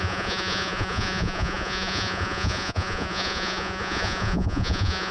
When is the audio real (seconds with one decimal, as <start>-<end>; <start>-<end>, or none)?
none